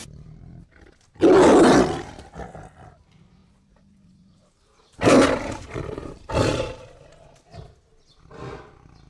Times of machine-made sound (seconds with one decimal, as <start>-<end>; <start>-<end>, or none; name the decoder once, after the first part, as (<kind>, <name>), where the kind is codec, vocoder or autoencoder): 3.4-6.8 (vocoder, BigVGAN v2)